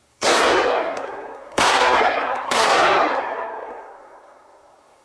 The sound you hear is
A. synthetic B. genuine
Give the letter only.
A